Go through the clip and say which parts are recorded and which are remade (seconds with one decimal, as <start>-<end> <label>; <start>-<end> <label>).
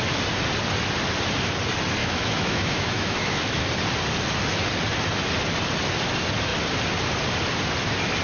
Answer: 0.0-2.0 recorded; 2.0-3.6 remade; 3.6-8.2 recorded